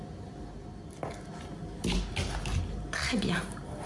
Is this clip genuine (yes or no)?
yes